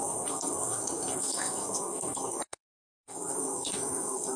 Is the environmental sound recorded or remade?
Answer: remade